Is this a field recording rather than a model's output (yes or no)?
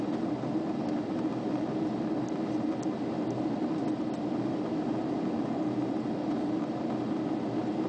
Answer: yes